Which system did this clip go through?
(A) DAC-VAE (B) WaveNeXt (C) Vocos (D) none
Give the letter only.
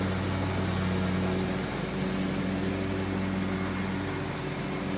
D